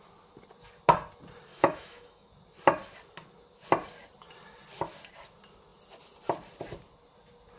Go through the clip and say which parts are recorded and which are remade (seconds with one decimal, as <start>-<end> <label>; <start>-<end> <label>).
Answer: 0.0-1.5 recorded; 1.5-2.3 remade; 2.3-7.6 recorded